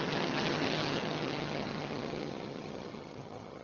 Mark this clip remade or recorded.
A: remade